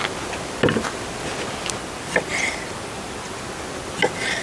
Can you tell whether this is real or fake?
real